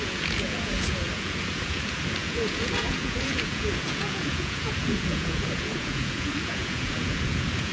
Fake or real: fake